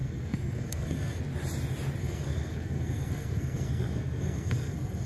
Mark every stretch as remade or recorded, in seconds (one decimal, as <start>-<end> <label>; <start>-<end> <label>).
0.0-1.2 remade; 1.2-2.0 recorded; 2.0-5.1 remade